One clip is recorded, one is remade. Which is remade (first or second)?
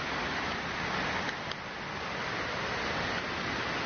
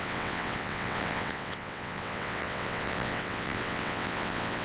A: second